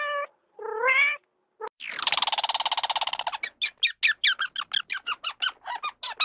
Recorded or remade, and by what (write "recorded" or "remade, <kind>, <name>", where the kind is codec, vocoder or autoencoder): recorded